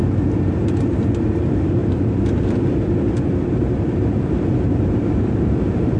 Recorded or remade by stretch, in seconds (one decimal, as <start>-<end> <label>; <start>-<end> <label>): 0.0-6.0 remade